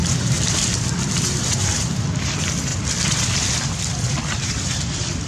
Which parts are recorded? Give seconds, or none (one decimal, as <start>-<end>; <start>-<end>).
none